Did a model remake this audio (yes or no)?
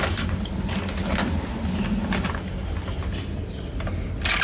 no